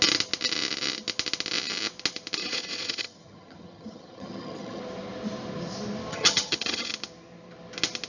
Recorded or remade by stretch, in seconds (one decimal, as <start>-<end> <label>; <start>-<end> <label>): 0.0-2.4 recorded; 2.4-4.8 remade; 4.8-6.1 recorded; 6.1-6.9 remade; 6.9-8.1 recorded

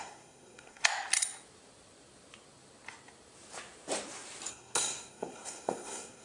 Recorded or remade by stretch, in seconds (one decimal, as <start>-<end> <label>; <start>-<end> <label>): 0.0-0.8 remade; 0.8-4.5 recorded; 4.5-6.2 remade